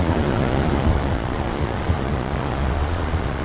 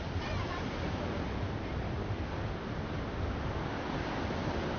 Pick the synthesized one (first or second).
first